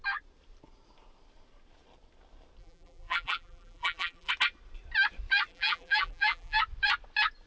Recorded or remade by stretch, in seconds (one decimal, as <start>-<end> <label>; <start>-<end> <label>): 0.0-2.6 recorded; 2.6-4.3 remade; 4.3-5.5 recorded; 5.5-6.6 remade; 6.6-7.5 recorded